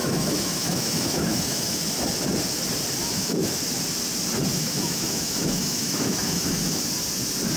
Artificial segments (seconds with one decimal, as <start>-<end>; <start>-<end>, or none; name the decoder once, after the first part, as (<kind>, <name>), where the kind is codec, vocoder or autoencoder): 0.0-1.9 (autoencoder, DAC-VAE); 3.0-3.6; 4.5-6.9